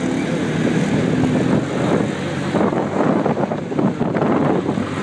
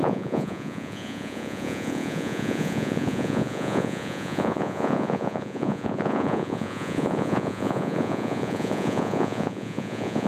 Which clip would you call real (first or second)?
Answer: first